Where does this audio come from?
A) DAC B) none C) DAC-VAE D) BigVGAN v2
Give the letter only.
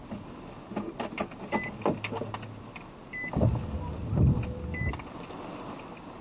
B